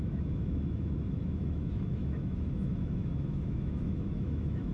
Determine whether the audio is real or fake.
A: fake